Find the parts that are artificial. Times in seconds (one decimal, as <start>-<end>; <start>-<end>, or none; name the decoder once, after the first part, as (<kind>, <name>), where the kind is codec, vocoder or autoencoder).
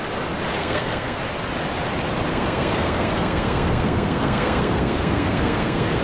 0.6-1.2 (codec, SNAC); 2.3-6.0